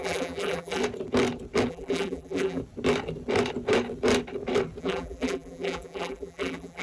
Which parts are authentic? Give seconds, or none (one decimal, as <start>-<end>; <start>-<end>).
0.8-1.7; 2.6-4.8